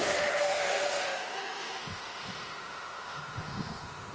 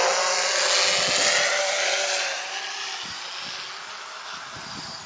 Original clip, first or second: second